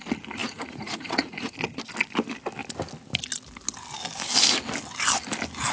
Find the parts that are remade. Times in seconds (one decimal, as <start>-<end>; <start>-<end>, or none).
0.4-1.5